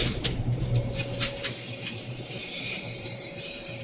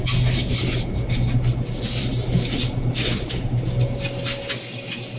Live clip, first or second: second